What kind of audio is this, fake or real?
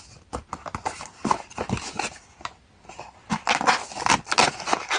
real